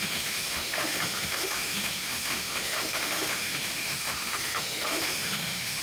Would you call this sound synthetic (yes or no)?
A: yes